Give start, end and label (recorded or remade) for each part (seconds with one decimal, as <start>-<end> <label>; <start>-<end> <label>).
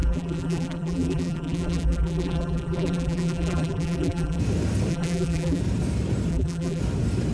0.0-4.4 remade; 4.4-4.9 recorded; 4.9-5.6 remade; 5.6-6.3 recorded; 6.3-6.8 remade; 6.8-7.3 recorded